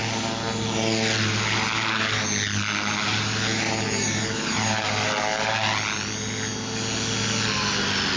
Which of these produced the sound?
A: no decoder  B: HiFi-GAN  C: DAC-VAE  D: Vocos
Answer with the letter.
A